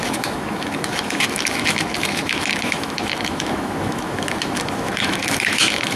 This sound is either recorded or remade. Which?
remade